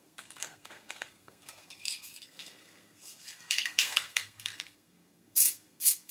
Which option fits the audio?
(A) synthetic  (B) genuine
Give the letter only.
A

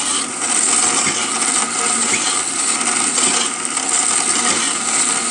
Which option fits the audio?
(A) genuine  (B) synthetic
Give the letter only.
A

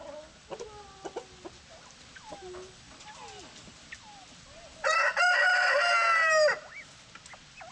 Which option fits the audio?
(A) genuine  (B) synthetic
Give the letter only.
A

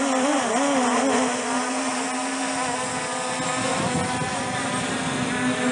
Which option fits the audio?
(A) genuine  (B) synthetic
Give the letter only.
A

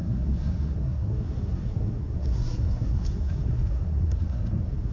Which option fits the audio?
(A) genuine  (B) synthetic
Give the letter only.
B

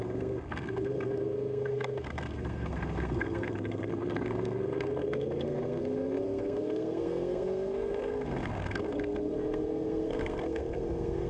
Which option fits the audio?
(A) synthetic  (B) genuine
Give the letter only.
A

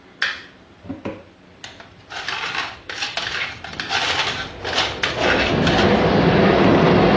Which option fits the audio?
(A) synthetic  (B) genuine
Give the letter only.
B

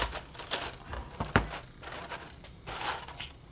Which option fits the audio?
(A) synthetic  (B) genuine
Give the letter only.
B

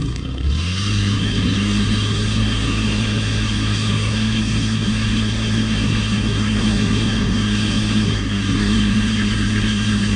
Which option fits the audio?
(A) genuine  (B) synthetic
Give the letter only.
B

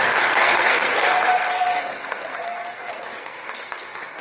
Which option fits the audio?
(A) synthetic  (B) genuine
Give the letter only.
A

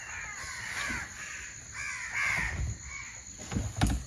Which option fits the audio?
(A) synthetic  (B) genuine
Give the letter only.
B